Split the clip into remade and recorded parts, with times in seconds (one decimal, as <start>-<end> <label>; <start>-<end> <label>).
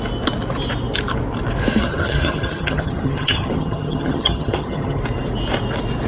0.0-1.8 recorded; 1.8-5.0 remade; 5.0-6.1 recorded